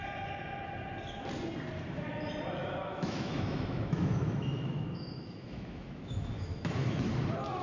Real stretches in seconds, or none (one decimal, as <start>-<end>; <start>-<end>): 0.0-2.6; 7.1-7.6